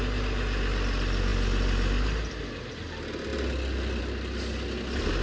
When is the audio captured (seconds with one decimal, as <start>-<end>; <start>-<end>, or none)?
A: 0.0-5.2